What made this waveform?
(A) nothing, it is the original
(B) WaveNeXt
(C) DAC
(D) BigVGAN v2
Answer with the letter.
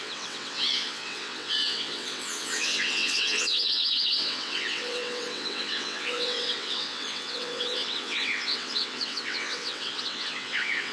B